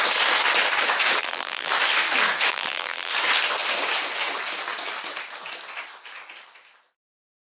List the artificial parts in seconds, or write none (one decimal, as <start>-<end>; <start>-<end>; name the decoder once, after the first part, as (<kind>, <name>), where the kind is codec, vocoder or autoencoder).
1.2-1.7 (vocoder, BigVGAN v2); 2.5-3.1